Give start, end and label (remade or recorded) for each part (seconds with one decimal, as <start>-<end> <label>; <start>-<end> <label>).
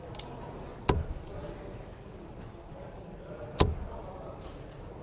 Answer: 0.0-5.0 recorded